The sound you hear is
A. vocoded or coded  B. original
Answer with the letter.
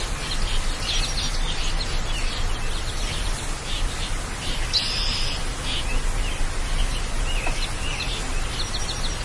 B